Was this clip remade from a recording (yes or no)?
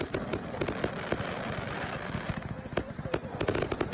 no